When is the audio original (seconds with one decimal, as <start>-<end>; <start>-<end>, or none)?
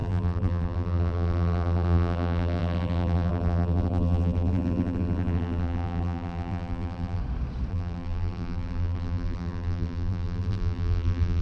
7.2-7.7